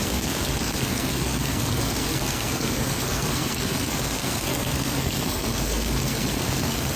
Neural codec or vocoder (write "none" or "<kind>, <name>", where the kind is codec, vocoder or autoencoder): codec, SNAC